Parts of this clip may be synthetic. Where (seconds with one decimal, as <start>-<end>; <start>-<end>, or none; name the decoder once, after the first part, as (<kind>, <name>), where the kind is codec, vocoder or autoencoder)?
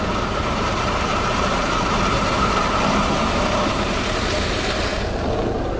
0.0-4.9 (vocoder, BigVGAN v2)